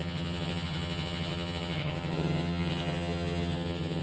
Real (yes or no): no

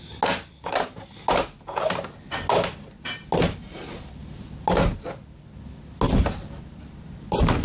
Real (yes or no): yes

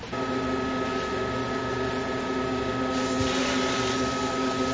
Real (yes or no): yes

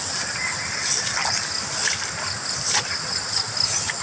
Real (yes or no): yes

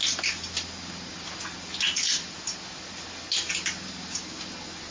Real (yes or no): yes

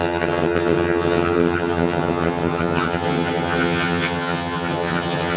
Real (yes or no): no